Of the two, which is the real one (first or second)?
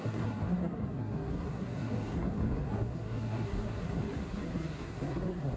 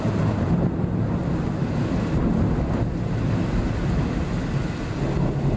second